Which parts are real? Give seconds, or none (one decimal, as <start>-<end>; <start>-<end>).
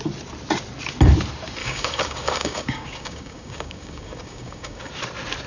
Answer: 0.0-1.6; 4.9-5.5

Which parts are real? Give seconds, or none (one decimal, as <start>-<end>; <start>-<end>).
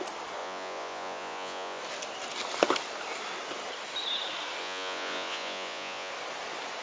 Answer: 0.0-0.4; 1.8-4.6; 6.1-6.8